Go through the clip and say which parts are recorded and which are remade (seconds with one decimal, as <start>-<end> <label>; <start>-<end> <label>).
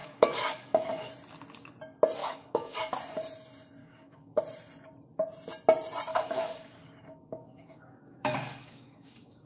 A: 0.0-1.1 remade; 1.1-2.2 recorded; 2.2-2.9 remade; 2.9-3.8 recorded; 3.8-4.4 remade; 4.4-6.1 recorded; 6.1-9.5 remade